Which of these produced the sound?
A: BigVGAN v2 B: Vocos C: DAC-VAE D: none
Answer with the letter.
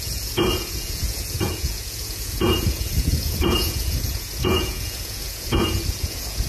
B